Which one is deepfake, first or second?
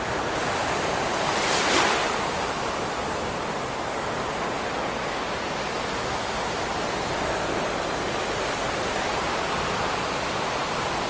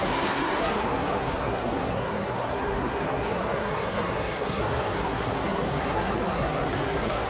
second